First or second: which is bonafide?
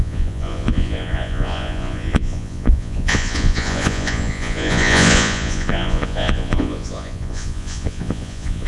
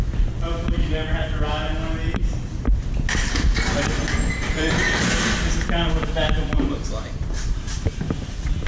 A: second